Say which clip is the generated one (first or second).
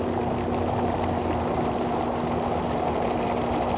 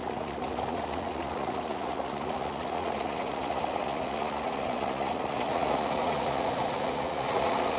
second